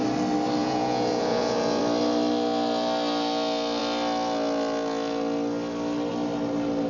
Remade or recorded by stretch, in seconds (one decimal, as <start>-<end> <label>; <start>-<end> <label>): 0.0-0.6 recorded; 0.6-1.8 remade; 1.8-6.9 recorded